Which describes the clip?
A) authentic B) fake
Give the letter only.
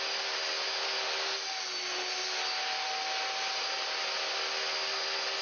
A